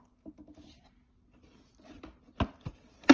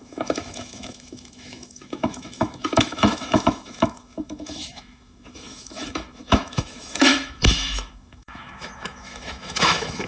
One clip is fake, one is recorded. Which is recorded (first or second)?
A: first